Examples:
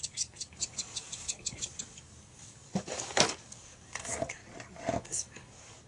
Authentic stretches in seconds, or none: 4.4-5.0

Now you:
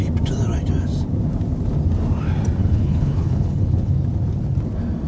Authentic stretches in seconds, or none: 0.0-2.6; 3.9-5.1

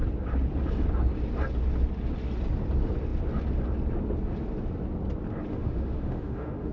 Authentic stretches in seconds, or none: 0.0-5.5

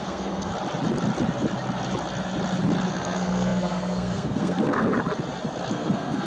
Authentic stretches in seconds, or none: 0.5-2.9; 4.9-5.7

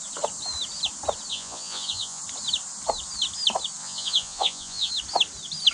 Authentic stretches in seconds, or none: 0.0-1.3; 2.2-3.8; 4.9-5.7

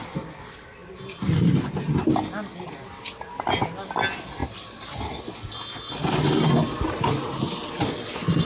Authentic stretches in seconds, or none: 0.0-8.4